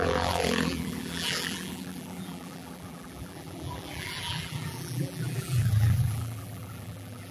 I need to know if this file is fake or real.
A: fake